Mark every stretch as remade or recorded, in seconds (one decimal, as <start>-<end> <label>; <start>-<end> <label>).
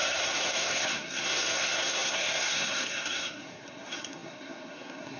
0.0-5.2 remade